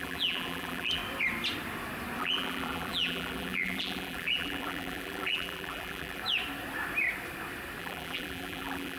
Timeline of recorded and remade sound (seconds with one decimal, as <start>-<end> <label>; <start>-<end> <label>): 0.0-1.0 remade; 1.0-2.2 recorded; 2.2-6.2 remade; 6.2-7.8 recorded; 7.8-9.0 remade